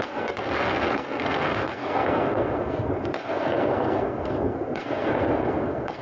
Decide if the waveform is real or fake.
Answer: fake